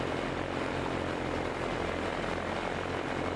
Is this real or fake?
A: real